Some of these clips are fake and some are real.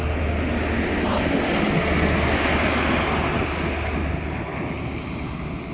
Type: real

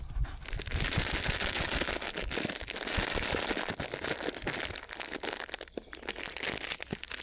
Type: real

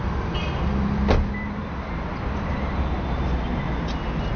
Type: real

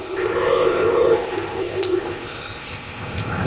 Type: fake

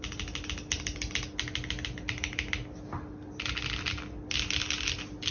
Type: real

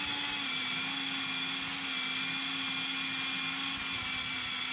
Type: real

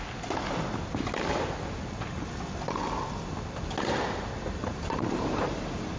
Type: real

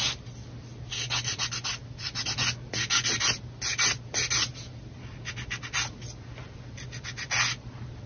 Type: real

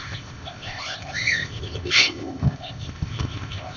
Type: fake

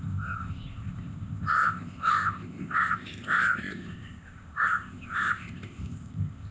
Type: fake